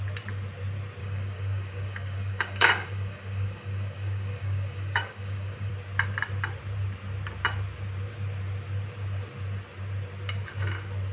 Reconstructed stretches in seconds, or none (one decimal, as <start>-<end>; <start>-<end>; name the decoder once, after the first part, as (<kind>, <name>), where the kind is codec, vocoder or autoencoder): 1.0-5.7 (codec, DAC)